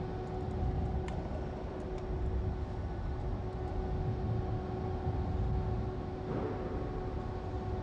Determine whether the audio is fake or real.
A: real